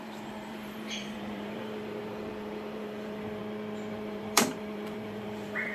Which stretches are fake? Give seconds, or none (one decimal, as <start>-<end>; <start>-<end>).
0.0-3.4; 3.9-5.7